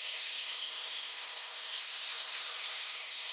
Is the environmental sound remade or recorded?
remade